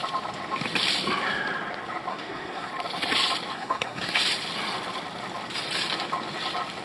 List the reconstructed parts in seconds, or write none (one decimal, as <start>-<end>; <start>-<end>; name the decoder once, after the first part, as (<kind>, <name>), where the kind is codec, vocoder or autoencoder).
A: 2.1-2.7 (codec, SNAC); 3.5-4.2